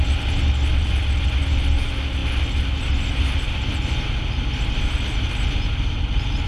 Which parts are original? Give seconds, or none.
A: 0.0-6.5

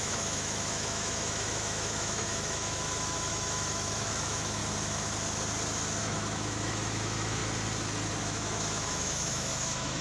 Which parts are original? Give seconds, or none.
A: 4.6-6.0; 7.4-8.2

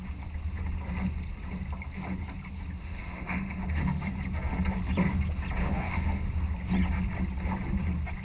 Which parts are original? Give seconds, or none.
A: 0.0-2.8; 4.1-5.6; 6.3-8.2

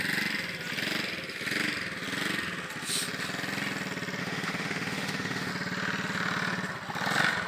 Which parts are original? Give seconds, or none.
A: 0.0-4.2; 5.5-7.5

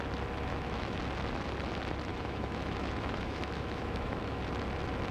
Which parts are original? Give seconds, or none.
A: 0.0-0.5; 1.0-2.1; 4.4-5.1

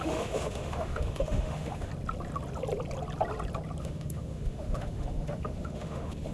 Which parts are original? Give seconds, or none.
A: 1.9-3.8